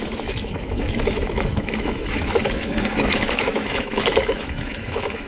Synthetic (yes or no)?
yes